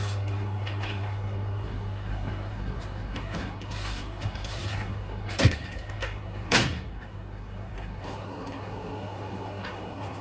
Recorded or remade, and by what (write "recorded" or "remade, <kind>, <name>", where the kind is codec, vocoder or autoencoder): remade, codec, SNAC